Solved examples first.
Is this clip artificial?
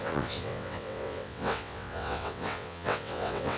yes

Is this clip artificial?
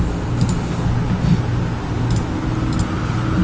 no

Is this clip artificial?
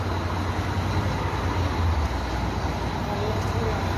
no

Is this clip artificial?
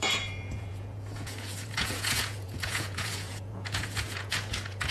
yes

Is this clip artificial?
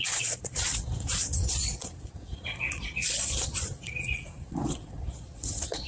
yes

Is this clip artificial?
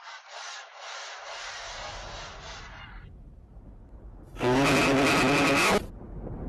no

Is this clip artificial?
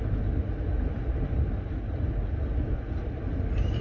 no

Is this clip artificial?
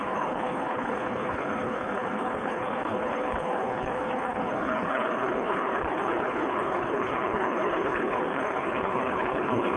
yes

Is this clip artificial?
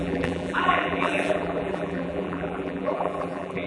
yes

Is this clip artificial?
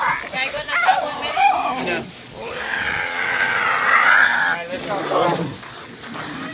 no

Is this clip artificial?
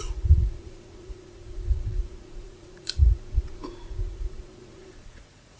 yes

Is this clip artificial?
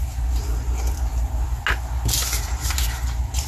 no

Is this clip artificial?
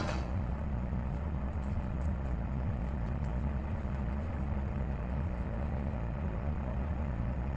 yes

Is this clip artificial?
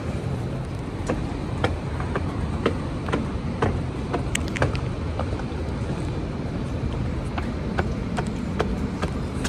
yes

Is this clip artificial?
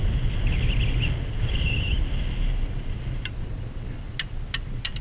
no